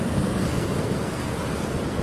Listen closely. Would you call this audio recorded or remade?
remade